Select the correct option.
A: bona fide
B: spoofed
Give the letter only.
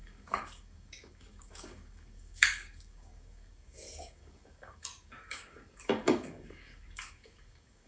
B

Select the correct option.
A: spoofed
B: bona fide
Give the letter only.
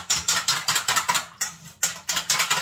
B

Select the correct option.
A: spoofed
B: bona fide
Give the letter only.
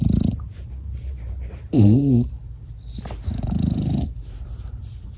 A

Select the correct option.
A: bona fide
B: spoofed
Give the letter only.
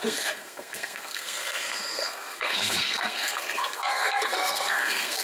B